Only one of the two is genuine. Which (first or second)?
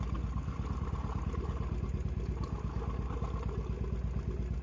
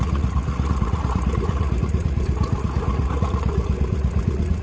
first